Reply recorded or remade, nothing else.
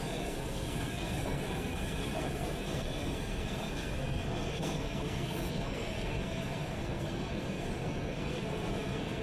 remade